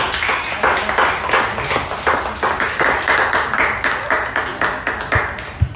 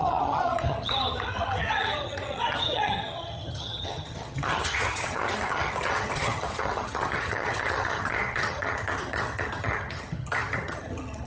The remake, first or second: second